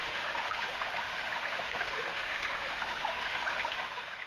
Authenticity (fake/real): fake